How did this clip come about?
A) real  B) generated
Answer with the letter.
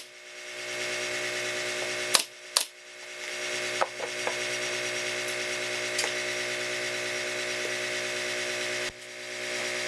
A